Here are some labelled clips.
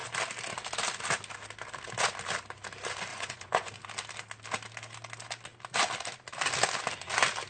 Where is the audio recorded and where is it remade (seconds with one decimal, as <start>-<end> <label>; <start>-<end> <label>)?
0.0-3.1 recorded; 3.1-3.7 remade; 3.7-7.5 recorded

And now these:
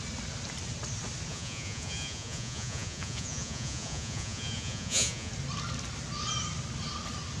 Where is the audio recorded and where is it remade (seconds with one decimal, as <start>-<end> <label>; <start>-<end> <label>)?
0.0-1.3 recorded; 1.3-5.3 remade; 5.3-7.4 recorded

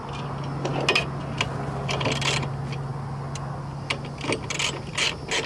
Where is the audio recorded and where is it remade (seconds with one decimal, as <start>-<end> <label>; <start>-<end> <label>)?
0.0-5.5 recorded

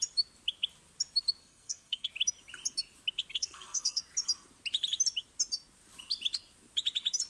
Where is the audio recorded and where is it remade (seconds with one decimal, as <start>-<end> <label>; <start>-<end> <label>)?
0.0-1.4 recorded; 1.4-2.1 remade; 2.1-3.3 recorded; 3.3-4.0 remade; 4.0-7.3 recorded

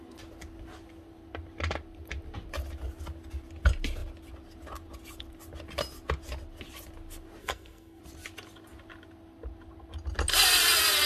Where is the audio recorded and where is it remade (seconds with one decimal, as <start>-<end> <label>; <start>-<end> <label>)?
0.0-7.4 recorded; 7.4-8.0 remade; 8.0-11.1 recorded